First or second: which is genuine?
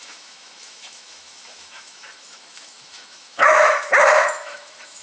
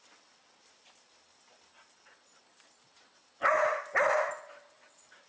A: second